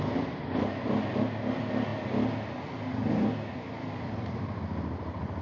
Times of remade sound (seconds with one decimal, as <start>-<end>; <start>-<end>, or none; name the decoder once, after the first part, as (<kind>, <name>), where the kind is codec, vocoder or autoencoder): none